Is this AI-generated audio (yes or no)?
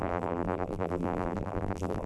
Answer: yes